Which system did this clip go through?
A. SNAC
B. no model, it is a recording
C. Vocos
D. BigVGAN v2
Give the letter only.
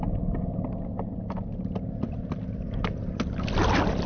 B